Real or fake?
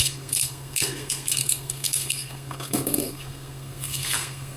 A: fake